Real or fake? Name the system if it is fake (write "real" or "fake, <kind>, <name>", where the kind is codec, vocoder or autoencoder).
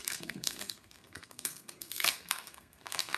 fake, codec, SNAC